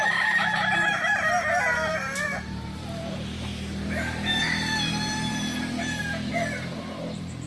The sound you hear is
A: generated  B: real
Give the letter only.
A